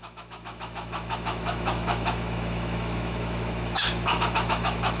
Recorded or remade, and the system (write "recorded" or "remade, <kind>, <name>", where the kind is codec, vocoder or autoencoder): remade, autoencoder, DAC-VAE